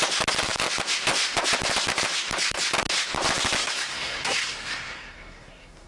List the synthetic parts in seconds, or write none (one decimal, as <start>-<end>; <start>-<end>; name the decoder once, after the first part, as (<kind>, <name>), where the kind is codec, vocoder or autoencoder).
3.6-5.9 (codec, SNAC)